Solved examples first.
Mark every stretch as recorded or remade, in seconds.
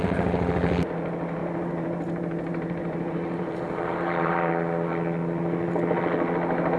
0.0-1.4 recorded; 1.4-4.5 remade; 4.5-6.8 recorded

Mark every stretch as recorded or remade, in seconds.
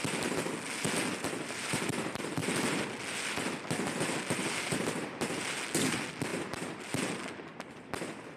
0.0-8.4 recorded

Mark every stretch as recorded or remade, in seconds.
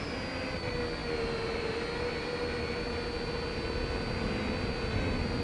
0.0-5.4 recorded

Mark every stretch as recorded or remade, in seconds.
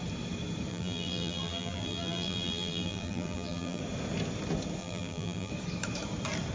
0.0-0.7 recorded; 0.7-3.8 remade; 3.8-4.8 recorded; 4.8-5.5 remade; 5.5-6.5 recorded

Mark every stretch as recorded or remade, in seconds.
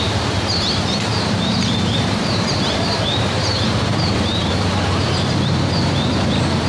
0.0-6.7 remade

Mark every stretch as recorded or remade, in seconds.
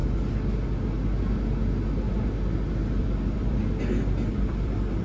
0.0-3.0 recorded; 3.0-3.6 remade; 3.6-4.3 recorded; 4.3-5.0 remade